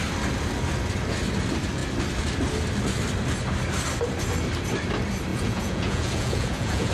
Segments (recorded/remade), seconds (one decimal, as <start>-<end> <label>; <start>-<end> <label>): 0.0-5.3 recorded; 5.3-6.9 remade